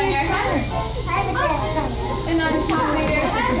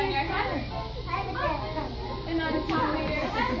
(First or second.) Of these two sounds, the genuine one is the first